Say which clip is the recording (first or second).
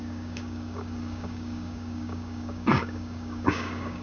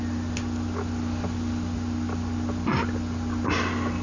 second